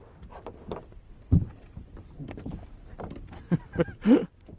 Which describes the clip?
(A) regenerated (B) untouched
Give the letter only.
B